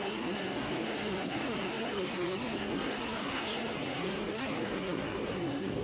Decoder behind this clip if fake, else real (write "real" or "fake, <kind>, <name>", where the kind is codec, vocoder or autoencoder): fake, codec, SNAC